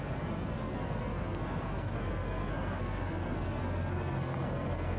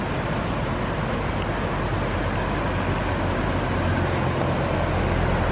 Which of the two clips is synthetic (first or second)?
first